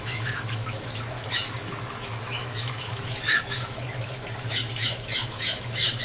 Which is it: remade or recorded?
remade